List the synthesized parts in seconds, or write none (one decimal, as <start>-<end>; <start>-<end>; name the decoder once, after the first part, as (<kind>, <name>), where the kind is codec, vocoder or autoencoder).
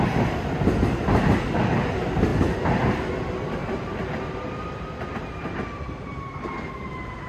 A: 3.6-6.6 (vocoder, BigVGAN v2)